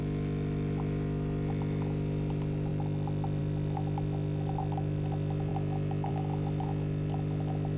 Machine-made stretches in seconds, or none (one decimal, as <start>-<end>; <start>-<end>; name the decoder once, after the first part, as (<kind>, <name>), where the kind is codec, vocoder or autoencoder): none